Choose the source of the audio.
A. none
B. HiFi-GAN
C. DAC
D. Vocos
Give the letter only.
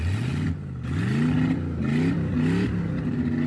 A